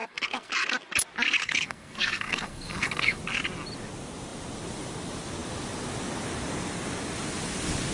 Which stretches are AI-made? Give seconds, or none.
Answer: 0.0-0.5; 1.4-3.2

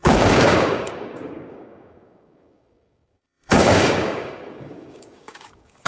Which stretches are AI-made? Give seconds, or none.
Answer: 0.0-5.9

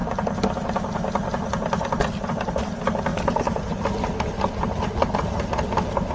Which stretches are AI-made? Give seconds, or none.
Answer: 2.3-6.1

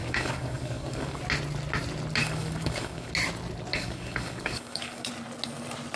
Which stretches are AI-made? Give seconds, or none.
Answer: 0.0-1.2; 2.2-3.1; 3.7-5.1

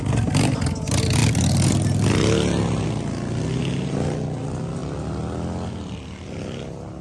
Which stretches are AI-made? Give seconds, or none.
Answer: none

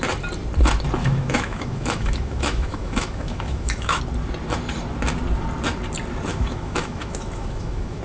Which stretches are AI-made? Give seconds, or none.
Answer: 1.0-4.0; 6.3-8.0